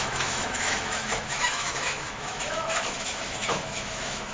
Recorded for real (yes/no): no